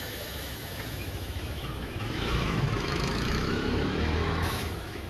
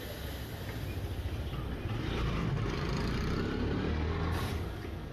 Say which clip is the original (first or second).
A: second